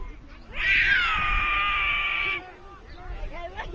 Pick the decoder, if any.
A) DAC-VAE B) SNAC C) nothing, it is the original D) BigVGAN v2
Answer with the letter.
C